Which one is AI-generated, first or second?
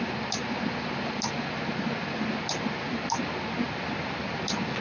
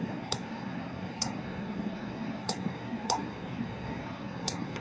second